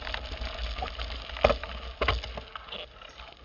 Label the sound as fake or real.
real